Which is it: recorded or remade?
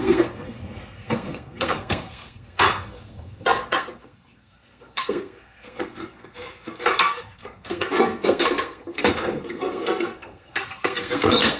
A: remade